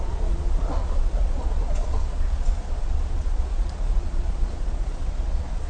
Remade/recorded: remade